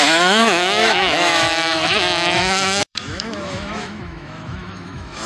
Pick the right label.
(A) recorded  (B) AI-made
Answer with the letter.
B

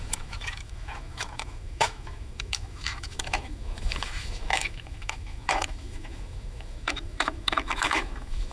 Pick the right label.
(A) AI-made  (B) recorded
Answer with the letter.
A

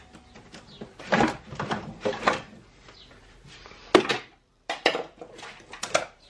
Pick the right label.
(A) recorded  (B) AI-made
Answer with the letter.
A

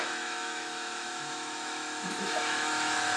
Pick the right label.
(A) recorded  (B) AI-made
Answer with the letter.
B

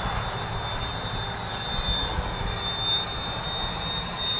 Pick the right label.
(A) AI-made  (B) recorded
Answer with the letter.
B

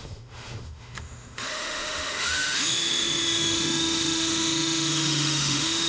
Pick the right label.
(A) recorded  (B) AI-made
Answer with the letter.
B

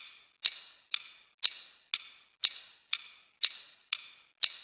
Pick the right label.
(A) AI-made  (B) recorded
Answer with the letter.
B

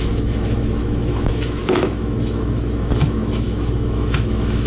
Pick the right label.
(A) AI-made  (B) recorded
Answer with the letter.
A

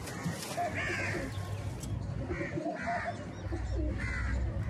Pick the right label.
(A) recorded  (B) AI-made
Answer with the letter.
A